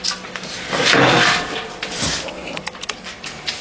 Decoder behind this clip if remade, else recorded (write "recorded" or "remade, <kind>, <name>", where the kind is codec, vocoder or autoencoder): recorded